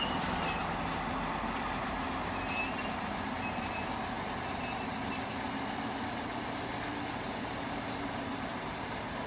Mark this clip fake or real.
real